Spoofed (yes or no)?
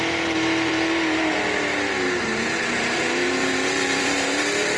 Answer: yes